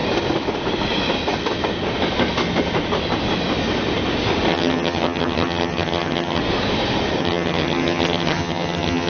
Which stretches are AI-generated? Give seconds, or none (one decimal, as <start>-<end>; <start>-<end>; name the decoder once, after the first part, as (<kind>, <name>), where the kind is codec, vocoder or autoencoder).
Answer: 4.5-6.4 (vocoder, HiFi-GAN); 7.2-9.1

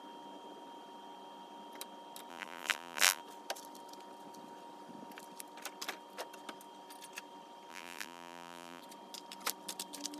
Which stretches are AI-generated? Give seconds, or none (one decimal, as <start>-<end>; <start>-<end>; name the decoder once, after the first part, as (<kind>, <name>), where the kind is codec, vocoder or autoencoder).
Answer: 2.3-3.2 (vocoder, BigVGAN v2); 7.7-8.8

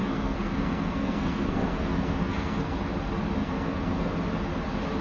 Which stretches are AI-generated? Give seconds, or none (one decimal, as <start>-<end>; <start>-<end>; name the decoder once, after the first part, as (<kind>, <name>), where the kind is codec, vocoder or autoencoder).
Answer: 0.0-2.8 (codec, SNAC); 3.4-4.1

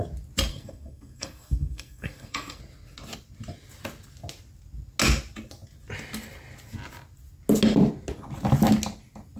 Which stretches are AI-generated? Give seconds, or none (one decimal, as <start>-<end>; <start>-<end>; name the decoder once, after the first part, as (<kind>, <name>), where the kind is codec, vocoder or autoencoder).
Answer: 0.5-2.6 (codec, SNAC)

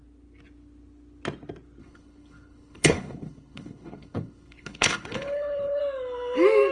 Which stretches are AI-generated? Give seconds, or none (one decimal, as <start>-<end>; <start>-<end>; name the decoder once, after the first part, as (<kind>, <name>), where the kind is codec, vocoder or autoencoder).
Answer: 1.8-5.8 (codec, HILCodec)